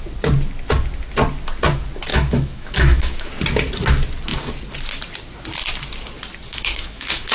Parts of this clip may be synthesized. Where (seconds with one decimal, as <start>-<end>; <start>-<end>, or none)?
2.1-3.3; 6.5-7.3